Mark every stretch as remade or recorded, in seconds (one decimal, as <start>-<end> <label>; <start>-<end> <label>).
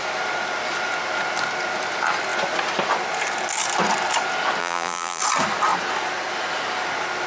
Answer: 0.0-4.6 recorded; 4.6-5.2 remade; 5.2-7.3 recorded